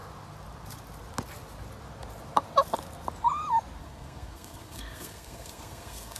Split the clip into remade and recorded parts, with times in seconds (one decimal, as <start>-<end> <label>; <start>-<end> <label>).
0.0-3.8 recorded; 3.8-6.2 remade